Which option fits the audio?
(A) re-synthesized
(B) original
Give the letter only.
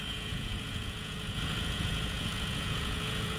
A